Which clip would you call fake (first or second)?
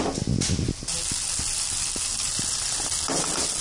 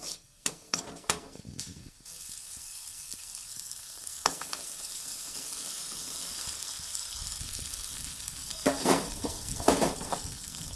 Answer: second